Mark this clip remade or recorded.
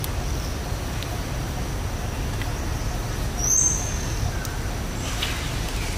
recorded